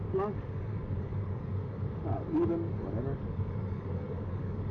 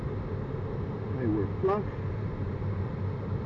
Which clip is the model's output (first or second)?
first